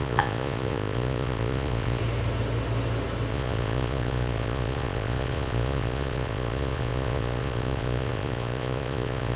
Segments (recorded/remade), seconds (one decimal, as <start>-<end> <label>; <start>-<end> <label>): 0.0-2.0 remade; 2.0-3.3 recorded; 3.3-9.4 remade